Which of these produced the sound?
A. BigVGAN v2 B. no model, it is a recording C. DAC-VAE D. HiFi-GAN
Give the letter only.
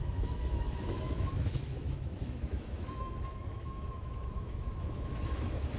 C